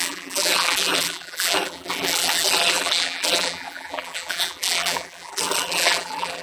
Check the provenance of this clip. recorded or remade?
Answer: remade